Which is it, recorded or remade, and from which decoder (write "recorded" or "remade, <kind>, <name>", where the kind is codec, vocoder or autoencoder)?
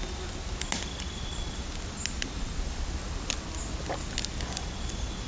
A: recorded